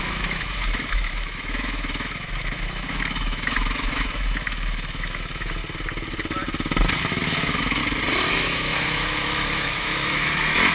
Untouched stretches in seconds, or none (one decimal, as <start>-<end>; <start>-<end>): 5.6-7.1; 7.8-8.3